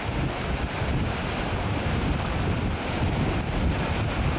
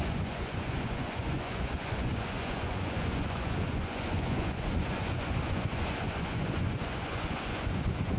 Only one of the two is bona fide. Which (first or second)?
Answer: first